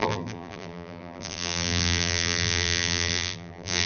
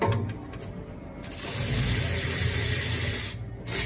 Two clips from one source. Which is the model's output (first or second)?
first